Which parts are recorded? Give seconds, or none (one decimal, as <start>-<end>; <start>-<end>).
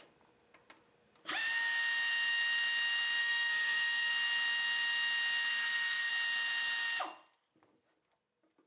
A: 0.0-3.2; 4.1-5.5; 6.1-8.7